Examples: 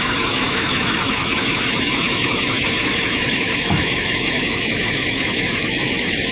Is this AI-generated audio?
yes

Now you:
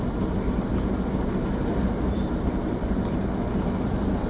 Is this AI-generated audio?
no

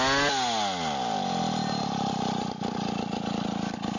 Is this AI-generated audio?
no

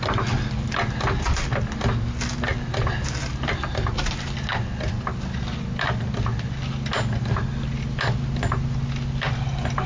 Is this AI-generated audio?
no